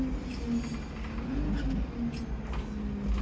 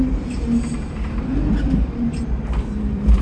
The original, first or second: first